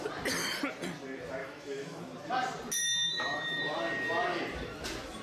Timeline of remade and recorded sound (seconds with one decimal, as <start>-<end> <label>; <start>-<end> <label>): 0.0-1.4 recorded; 1.4-2.0 remade; 2.0-2.8 recorded; 2.8-3.6 remade; 3.6-5.2 recorded